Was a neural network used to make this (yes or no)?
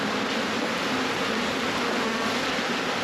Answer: no